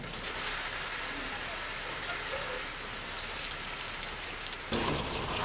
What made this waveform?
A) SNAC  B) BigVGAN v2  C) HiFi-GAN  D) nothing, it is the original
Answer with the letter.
D